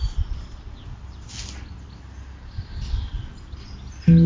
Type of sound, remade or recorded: recorded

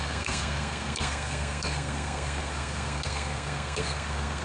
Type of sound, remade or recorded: remade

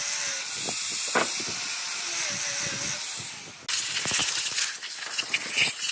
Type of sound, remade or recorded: recorded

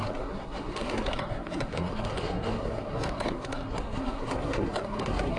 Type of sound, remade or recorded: remade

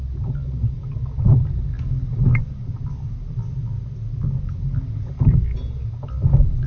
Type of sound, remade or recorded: recorded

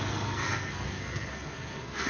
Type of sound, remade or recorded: remade